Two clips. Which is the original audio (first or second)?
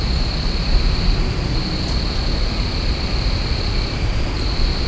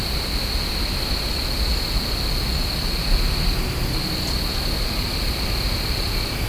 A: second